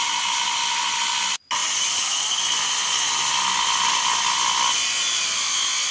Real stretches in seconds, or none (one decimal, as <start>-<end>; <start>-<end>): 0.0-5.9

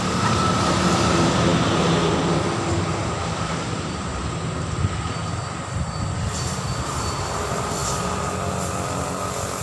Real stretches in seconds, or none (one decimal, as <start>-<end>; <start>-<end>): 0.0-9.6

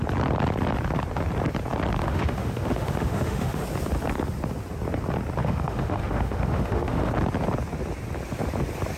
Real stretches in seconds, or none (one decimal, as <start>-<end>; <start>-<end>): 0.0-2.0; 3.6-5.4; 7.1-9.0

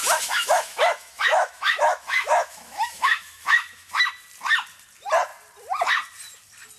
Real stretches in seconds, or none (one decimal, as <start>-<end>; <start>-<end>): 4.1-6.8